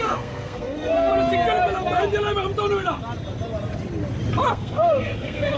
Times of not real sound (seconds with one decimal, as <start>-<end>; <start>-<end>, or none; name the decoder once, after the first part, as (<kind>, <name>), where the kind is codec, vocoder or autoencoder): 0.0-1.1 (codec, SNAC); 4.5-5.6